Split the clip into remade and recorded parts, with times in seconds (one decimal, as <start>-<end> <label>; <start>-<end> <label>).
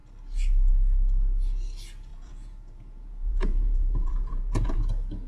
0.0-2.1 recorded; 2.1-4.8 remade; 4.8-5.3 recorded